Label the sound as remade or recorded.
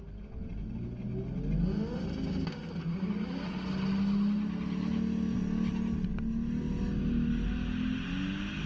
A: recorded